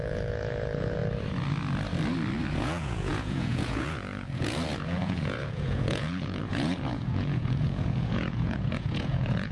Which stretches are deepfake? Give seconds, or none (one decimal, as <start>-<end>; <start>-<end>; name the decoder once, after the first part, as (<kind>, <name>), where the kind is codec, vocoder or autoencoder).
0.0-1.0 (vocoder, Vocos); 2.6-9.5